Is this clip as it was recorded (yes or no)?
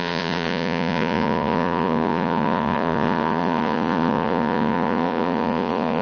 no